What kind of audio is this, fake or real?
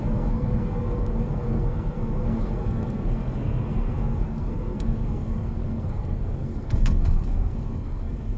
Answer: fake